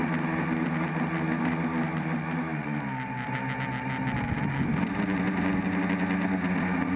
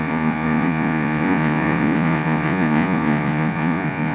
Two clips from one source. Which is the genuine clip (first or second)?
first